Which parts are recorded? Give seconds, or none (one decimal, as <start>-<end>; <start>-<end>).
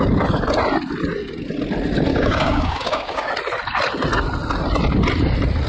0.0-2.1; 3.3-5.7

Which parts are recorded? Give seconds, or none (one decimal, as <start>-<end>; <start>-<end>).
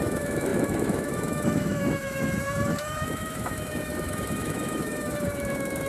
none